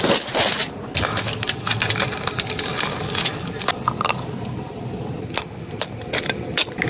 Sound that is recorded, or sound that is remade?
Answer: recorded